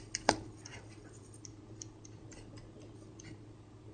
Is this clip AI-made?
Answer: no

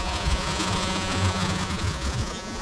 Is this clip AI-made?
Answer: yes